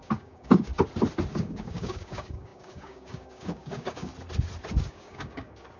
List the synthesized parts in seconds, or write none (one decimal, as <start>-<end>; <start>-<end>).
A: 0.0-0.7; 1.3-4.1; 4.8-5.8